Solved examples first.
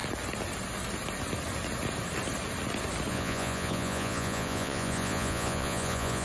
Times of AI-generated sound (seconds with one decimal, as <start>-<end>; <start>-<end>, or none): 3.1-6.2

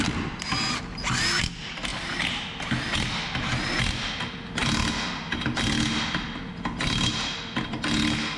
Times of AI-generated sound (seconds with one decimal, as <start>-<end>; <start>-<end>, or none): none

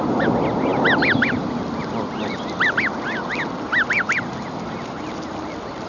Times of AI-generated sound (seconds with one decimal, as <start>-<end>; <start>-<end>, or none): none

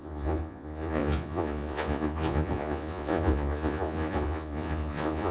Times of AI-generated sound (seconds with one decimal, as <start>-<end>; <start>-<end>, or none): 0.0-5.3

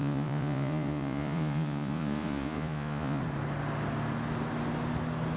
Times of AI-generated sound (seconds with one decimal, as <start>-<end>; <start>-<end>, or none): 0.0-3.2

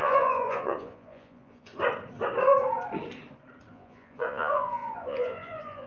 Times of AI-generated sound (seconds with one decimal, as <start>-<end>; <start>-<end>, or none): 0.0-1.7; 3.7-5.9

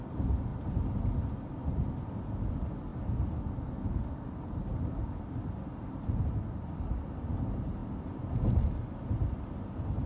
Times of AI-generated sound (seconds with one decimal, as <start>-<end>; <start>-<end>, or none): none

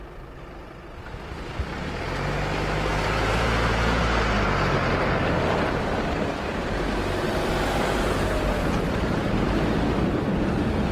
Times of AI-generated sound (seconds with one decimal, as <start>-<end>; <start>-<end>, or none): 2.9-4.0